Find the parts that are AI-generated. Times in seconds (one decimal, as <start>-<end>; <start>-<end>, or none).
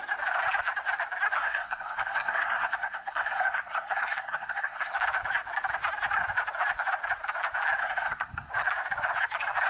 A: 1.4-4.9; 7.8-8.5